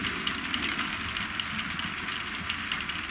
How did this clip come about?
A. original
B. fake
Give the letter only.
A